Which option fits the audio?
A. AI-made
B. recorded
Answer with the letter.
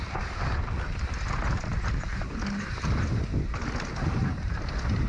B